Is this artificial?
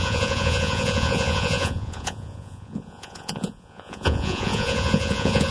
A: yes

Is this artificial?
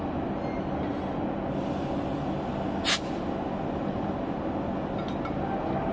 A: no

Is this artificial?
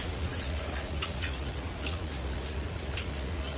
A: yes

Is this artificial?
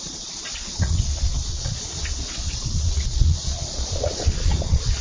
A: yes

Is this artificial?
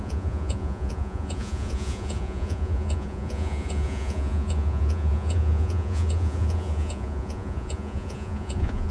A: yes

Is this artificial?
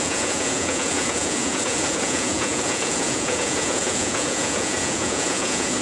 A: yes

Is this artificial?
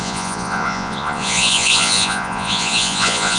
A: yes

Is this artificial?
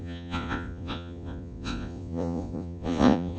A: yes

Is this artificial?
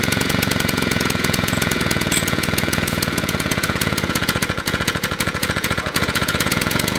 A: yes